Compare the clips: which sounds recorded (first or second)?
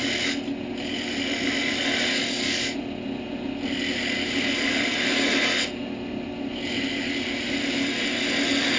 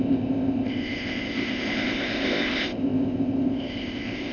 first